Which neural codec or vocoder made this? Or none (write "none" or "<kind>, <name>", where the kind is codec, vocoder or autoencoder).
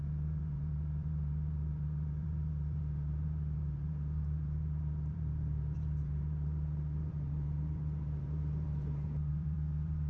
vocoder, BigVGAN v2